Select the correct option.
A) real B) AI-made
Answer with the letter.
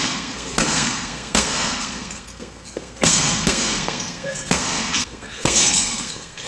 B